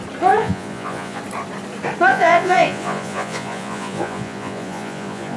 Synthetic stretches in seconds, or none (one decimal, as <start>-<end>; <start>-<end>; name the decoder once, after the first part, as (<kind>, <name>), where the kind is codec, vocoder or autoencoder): 0.4-1.2 (vocoder, Vocos); 2.1-5.4